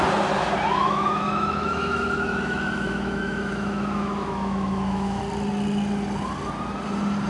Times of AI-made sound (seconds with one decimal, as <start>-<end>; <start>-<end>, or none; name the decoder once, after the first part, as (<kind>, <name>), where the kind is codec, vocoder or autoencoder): 0.8-5.2 (autoencoder, DAC-VAE)